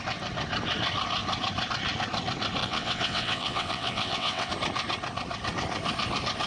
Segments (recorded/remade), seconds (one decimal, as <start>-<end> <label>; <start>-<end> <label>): 0.0-2.6 recorded; 2.6-4.5 remade; 4.5-6.5 recorded